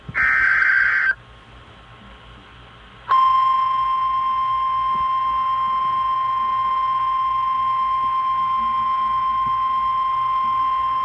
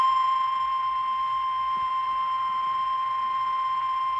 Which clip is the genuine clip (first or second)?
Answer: first